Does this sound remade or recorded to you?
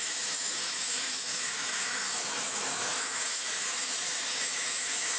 remade